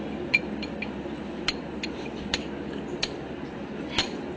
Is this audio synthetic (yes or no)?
no